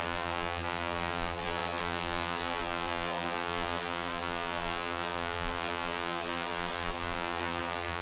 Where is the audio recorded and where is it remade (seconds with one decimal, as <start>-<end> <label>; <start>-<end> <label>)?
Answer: 0.0-8.0 remade